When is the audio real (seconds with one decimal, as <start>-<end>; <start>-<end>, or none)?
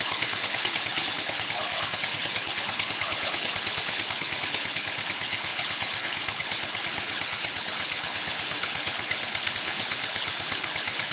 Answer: none